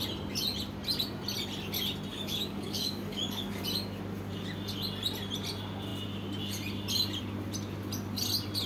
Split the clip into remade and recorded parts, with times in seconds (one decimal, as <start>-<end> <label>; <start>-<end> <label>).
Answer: 0.0-2.1 recorded; 2.1-3.6 remade; 3.6-8.7 recorded